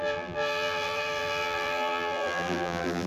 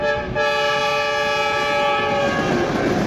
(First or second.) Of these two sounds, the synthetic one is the first